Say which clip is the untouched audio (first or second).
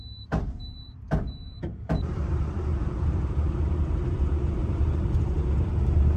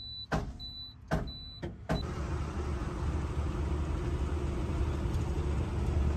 second